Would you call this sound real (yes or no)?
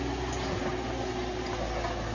yes